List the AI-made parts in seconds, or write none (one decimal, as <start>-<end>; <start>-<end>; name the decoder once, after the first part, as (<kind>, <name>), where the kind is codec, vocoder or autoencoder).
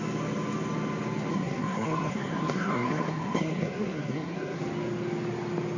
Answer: 1.3-4.6 (codec, SNAC)